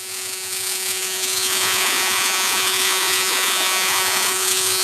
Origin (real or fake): fake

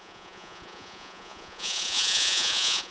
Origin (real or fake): fake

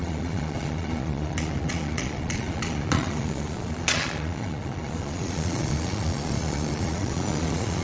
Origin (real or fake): fake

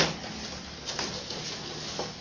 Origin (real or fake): real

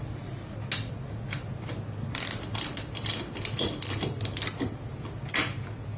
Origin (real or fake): real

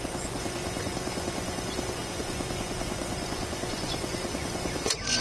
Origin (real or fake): fake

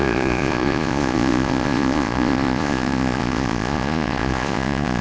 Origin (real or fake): fake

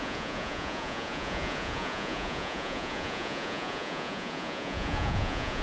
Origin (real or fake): fake